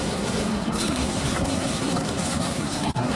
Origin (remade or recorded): remade